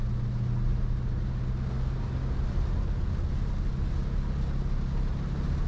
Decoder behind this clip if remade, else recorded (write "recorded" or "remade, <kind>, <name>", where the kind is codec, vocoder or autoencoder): recorded